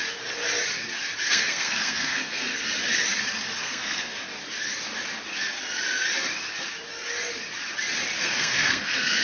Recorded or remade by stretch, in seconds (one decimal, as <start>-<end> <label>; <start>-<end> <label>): 0.0-1.3 recorded; 1.3-2.6 remade; 2.6-3.6 recorded; 3.6-4.1 remade; 4.1-8.2 recorded; 8.2-9.2 remade